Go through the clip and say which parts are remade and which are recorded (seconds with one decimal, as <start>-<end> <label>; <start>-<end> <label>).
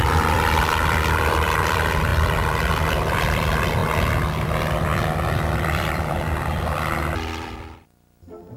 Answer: 0.0-3.8 remade; 3.8-4.4 recorded; 4.4-4.9 remade; 4.9-5.4 recorded; 5.4-8.6 remade